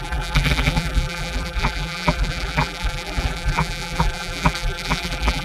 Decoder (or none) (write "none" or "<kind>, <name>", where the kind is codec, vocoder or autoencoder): vocoder, BigVGAN v2